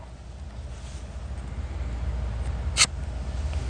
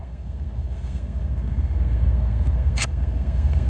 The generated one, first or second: second